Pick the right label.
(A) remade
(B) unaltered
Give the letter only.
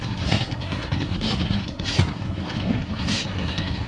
A